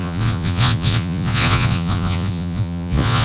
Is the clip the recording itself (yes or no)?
no